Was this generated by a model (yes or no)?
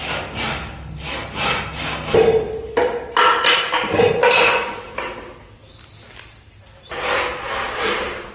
no